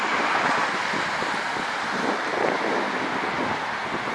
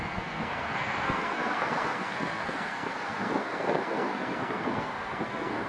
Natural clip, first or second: first